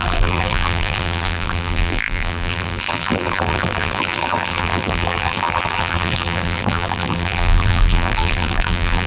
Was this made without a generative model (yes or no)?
no